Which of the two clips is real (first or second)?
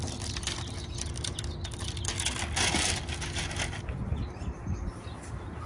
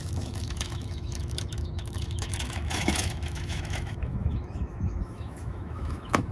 first